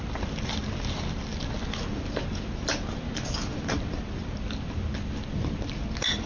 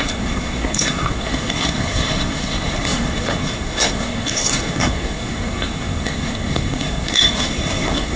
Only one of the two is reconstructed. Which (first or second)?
second